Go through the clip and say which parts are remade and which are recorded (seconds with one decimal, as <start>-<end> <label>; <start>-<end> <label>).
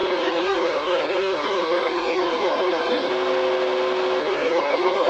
0.0-3.1 remade; 3.1-4.2 recorded; 4.2-5.1 remade